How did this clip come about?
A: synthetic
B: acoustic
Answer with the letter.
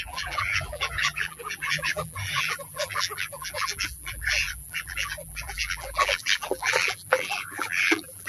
A